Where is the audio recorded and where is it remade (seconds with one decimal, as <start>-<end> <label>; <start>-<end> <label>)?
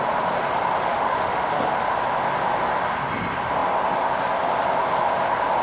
0.0-0.8 recorded; 0.8-1.8 remade; 1.8-5.6 recorded